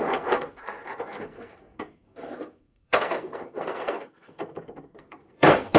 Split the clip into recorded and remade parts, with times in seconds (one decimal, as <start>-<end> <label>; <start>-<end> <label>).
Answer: 0.0-5.8 remade